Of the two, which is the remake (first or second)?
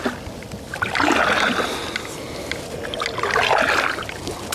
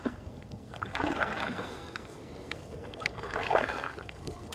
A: second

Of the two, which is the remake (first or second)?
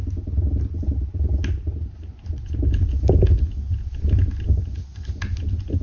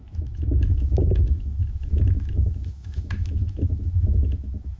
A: second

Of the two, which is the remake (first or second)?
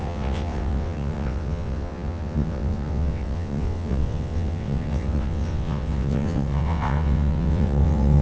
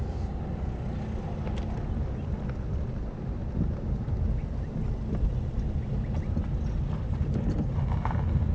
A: first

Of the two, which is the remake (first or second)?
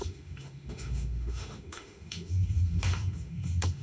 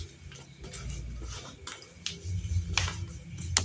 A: first